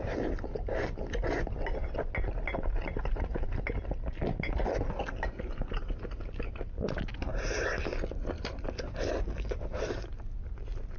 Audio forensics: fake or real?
real